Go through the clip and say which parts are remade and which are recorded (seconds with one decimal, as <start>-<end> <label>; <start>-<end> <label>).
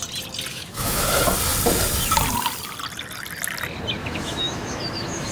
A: 0.0-0.5 recorded; 0.5-1.0 remade; 1.0-4.0 recorded; 4.0-5.3 remade